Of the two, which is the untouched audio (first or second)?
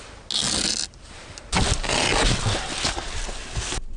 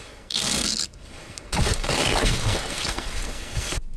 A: first